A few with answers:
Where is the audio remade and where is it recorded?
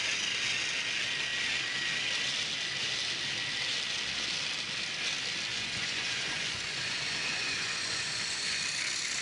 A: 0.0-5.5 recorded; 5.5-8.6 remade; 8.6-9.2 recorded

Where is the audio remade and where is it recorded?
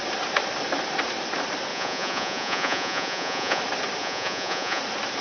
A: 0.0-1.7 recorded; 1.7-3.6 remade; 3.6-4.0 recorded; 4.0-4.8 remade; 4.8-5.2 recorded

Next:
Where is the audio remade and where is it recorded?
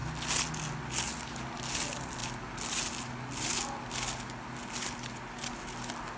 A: 0.0-6.2 recorded